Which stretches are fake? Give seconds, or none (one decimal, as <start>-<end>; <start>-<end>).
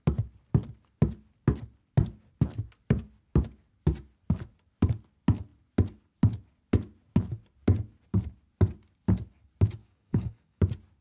9.8-10.6